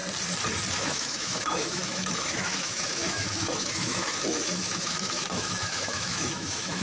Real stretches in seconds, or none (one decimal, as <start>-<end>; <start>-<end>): 0.0-0.7